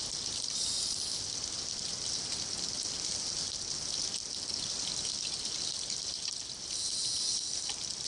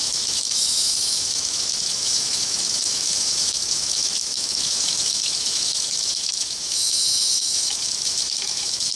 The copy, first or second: second